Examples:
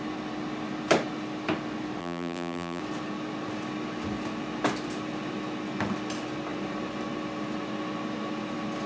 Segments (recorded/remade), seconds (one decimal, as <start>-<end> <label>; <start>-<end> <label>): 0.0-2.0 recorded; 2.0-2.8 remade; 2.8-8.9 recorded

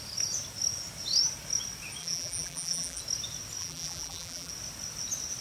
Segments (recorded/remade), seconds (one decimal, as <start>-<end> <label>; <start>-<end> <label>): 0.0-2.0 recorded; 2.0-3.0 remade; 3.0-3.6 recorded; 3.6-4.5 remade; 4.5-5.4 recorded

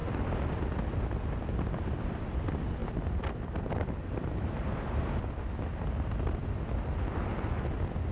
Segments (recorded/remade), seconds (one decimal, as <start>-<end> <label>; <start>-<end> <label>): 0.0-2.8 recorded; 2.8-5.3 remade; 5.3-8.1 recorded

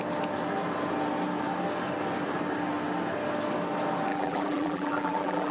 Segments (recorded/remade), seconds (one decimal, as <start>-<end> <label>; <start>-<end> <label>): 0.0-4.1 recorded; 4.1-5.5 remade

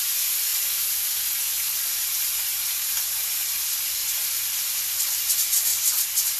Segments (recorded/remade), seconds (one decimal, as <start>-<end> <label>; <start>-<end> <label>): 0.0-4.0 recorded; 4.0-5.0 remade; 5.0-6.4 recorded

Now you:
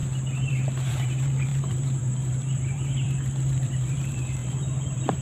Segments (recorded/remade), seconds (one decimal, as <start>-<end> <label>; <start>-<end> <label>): 0.0-0.5 recorded; 0.5-5.2 remade

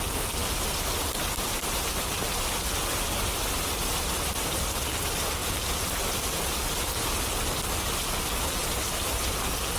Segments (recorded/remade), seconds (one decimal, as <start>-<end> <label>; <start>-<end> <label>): 0.0-0.4 recorded; 0.4-1.5 remade; 1.5-2.9 recorded; 2.9-4.6 remade; 4.6-9.8 recorded